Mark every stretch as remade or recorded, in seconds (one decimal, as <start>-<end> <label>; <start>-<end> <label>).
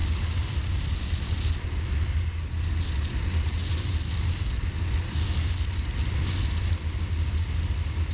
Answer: 0.0-8.1 recorded